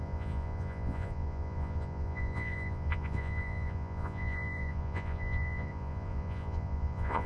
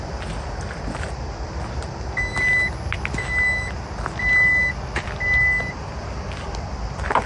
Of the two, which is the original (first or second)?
second